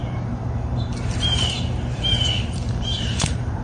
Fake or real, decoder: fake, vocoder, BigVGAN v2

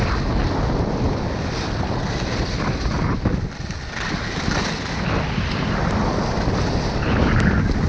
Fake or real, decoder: real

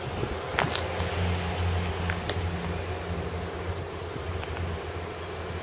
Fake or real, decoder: real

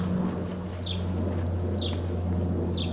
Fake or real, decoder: real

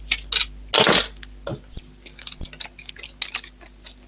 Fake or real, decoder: real